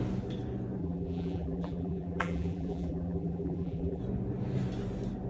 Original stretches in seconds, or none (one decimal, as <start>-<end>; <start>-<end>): 0.0-0.8; 4.0-5.3